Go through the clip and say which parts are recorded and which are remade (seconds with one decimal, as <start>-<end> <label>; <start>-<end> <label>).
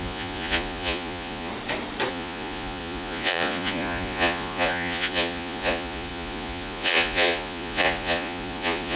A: 0.0-1.5 remade; 1.5-2.1 recorded; 2.1-9.0 remade